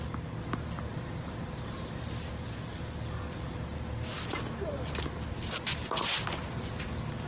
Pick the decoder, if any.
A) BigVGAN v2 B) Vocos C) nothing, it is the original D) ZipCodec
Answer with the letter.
C